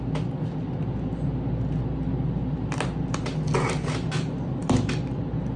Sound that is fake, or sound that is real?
real